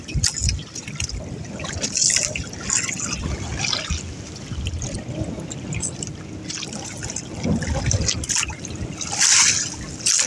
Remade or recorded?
recorded